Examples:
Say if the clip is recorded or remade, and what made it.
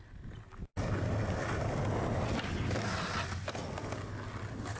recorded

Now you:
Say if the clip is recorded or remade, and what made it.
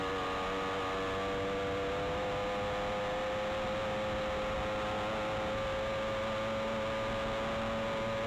recorded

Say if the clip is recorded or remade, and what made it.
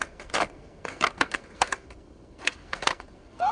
remade, codec, SNAC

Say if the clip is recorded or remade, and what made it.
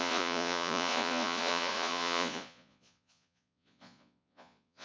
remade, vocoder, Vocos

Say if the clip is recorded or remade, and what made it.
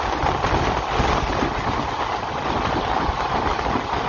recorded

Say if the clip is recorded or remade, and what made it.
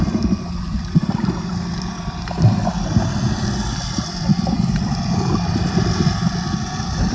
remade, vocoder, BigVGAN v2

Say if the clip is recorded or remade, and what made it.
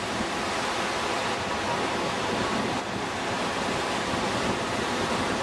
recorded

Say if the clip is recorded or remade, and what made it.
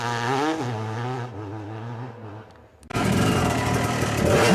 recorded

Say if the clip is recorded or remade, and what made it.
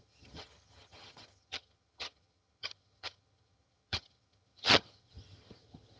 remade, vocoder, HiFi-GAN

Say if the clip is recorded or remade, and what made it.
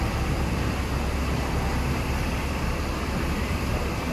remade, vocoder, BigVGAN v2